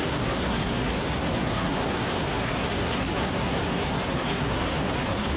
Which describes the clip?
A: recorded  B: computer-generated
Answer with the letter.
B